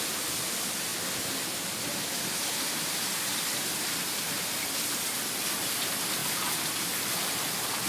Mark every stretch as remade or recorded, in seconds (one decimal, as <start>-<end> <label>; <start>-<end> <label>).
0.0-7.9 recorded